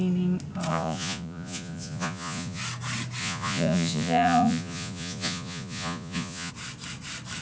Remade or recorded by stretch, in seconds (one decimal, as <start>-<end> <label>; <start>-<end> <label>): 0.0-0.7 recorded; 0.7-2.6 remade; 2.6-3.2 recorded; 3.2-6.5 remade; 6.5-7.4 recorded